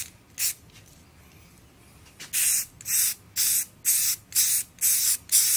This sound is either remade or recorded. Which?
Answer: recorded